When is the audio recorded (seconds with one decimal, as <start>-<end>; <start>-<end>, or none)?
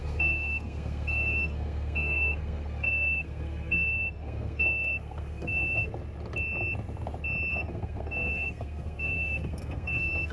5.9-7.5